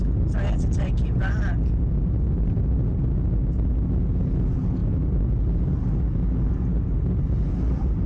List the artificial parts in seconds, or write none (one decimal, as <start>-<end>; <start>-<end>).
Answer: none